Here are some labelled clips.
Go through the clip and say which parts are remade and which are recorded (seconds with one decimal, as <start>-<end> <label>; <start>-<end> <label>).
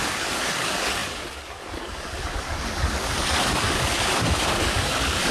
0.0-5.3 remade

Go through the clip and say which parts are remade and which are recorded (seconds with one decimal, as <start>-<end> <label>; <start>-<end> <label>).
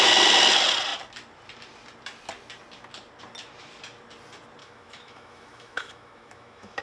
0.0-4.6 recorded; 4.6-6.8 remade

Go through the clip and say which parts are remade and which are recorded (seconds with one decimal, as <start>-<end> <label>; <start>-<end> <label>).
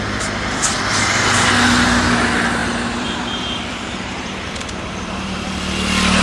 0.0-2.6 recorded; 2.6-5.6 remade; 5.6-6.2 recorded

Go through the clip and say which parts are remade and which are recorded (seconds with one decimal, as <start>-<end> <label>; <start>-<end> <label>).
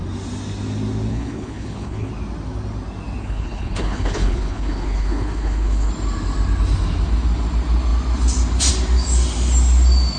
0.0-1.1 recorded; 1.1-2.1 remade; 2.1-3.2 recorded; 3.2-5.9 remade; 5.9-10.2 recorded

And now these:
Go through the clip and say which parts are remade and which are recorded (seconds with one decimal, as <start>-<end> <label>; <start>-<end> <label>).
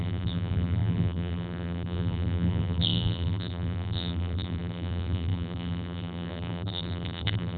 0.0-7.6 remade